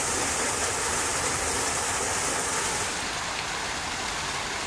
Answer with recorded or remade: recorded